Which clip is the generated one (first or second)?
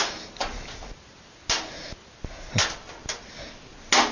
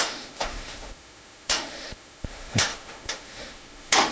second